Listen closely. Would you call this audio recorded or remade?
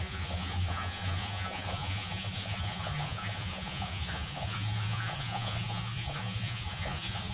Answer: remade